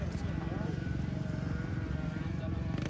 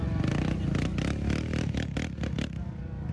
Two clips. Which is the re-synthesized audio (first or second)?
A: first